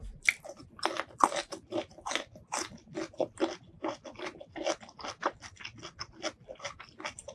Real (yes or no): yes